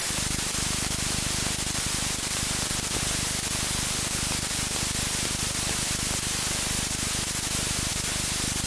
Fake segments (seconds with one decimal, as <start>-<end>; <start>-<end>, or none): 0.0-2.2; 7.9-8.7